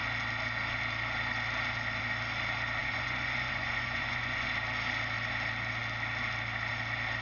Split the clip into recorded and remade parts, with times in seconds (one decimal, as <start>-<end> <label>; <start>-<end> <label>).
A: 0.0-2.8 recorded; 2.8-4.5 remade; 4.5-7.2 recorded